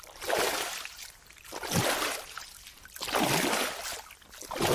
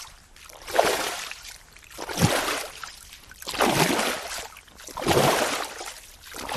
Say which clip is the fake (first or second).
second